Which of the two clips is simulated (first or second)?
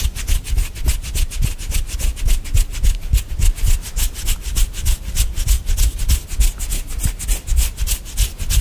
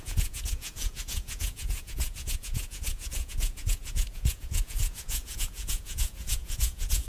second